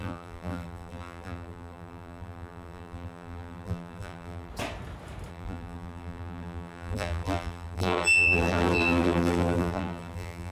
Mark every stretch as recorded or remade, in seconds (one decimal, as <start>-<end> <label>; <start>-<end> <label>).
0.0-4.5 remade; 4.5-5.3 recorded; 5.3-10.5 remade